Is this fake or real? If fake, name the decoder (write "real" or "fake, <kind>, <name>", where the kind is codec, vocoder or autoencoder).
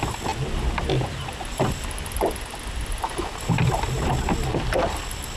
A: real